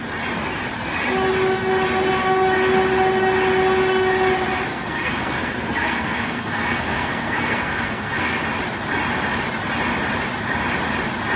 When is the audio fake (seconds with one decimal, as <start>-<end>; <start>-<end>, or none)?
4.7-8.4